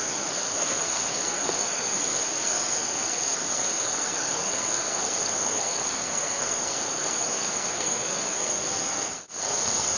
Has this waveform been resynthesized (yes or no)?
yes